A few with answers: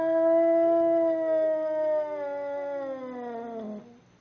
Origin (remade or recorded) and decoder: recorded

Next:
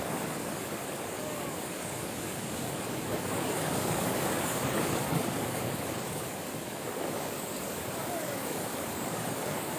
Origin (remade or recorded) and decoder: remade, codec, DAC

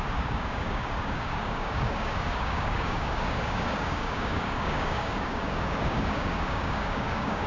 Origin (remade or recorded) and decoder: remade, codec, DAC